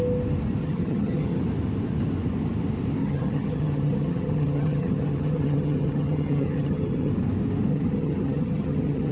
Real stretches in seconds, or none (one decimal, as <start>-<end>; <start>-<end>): 0.0-0.6; 1.4-3.0; 7.1-7.7